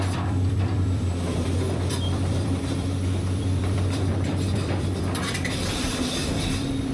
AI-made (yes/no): yes